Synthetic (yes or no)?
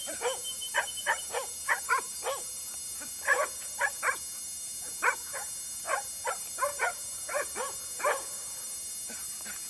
yes